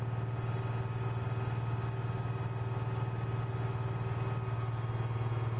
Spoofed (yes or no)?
no